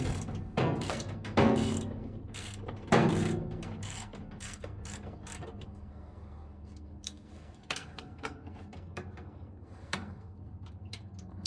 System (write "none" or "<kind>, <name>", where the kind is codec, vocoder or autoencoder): codec, SNAC